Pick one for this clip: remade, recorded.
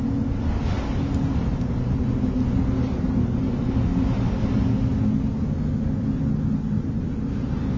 recorded